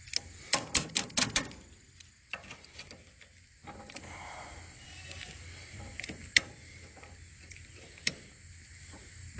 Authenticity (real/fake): real